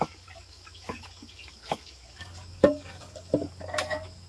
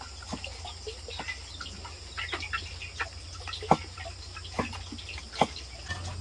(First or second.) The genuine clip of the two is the second